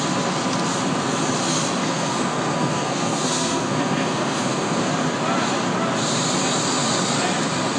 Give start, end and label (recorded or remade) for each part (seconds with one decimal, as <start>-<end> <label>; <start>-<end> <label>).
0.0-1.8 recorded; 1.8-4.9 remade; 4.9-7.8 recorded